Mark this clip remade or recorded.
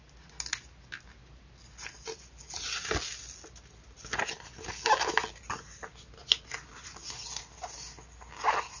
recorded